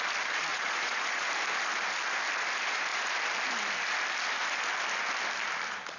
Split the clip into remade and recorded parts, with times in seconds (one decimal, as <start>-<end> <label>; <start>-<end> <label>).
0.0-0.5 recorded; 0.5-1.2 remade; 1.2-6.0 recorded